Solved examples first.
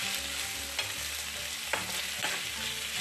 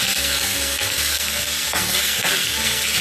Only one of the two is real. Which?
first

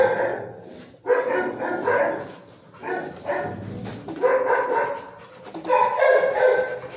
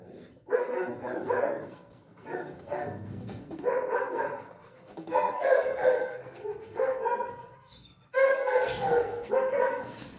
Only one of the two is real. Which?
first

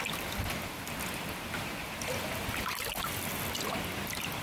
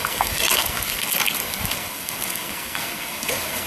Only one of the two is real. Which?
first